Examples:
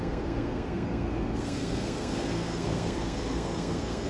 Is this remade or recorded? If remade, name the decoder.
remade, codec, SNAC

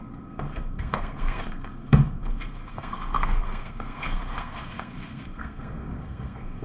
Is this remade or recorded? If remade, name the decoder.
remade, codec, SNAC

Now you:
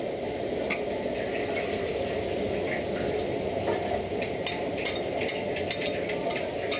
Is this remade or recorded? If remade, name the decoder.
recorded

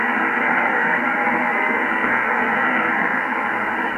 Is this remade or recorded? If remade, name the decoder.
remade, codec, SNAC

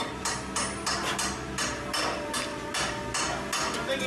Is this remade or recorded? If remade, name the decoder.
recorded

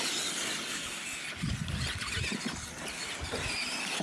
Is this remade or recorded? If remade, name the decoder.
recorded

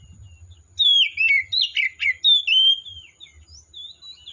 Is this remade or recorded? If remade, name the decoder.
recorded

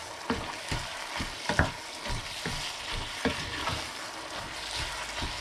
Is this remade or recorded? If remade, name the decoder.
recorded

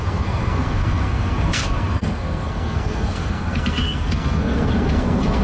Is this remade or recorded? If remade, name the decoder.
remade, codec, SNAC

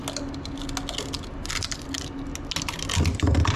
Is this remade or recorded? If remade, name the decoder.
recorded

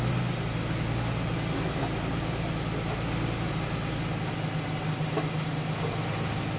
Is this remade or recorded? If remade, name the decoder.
recorded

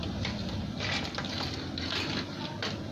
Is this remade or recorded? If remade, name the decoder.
recorded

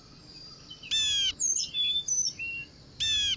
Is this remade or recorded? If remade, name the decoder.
recorded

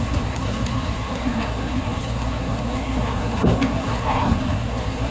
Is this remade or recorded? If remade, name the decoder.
remade, codec, SNAC